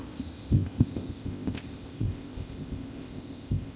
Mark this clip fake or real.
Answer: fake